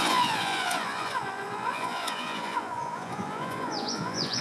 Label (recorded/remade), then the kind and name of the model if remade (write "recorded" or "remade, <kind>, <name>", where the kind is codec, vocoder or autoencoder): remade, vocoder, Vocos